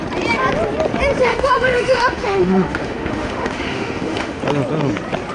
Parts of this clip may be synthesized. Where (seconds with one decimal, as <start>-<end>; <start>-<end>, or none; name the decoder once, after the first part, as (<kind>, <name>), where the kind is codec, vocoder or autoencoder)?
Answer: 1.2-4.4 (autoencoder, DAC-VAE)